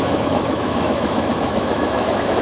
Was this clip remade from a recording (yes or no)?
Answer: yes